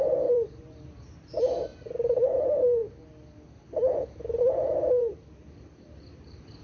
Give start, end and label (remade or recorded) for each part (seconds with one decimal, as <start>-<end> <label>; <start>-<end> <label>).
0.0-1.7 remade; 1.7-2.4 recorded; 2.4-2.8 remade; 2.8-4.4 recorded; 4.4-6.6 remade